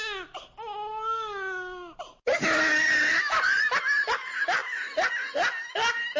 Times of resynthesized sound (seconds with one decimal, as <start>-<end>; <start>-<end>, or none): none